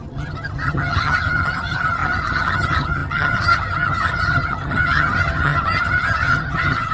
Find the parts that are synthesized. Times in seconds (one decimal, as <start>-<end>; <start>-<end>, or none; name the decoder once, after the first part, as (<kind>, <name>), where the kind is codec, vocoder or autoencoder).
0.0-6.9 (vocoder, HiFi-GAN)